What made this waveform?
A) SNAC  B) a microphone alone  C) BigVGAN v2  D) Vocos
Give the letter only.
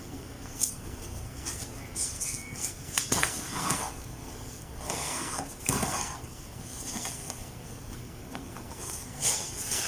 A